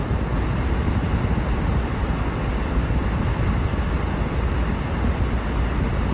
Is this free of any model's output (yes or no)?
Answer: yes